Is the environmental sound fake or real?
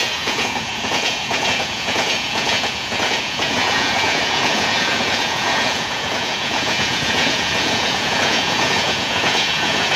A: fake